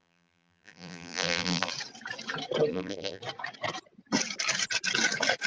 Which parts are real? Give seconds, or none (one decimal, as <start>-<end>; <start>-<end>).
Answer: 1.7-2.7; 3.2-5.5